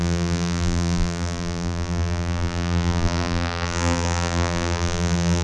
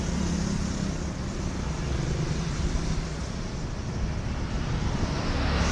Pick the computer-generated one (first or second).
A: first